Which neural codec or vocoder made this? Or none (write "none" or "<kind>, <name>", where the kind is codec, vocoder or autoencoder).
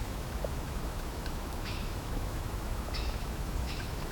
autoencoder, DAC-VAE